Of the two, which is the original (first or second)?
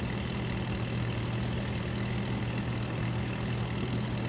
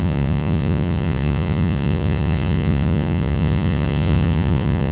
first